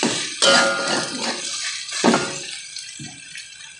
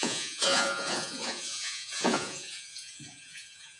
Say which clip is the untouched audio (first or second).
first